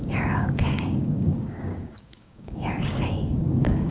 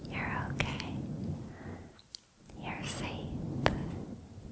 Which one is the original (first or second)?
second